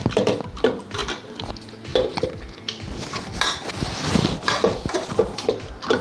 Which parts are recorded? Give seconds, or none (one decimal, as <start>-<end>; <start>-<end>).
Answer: 0.0-6.0